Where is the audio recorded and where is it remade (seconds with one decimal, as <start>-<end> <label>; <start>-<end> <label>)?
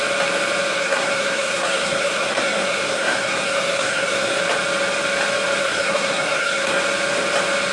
0.0-0.7 recorded; 0.7-4.4 remade; 4.4-5.6 recorded; 5.6-6.8 remade; 6.8-7.7 recorded